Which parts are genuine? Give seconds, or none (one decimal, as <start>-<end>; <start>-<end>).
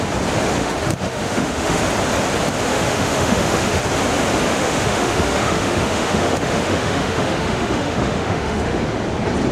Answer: 0.0-0.6; 1.8-2.7; 3.8-4.5; 8.8-9.5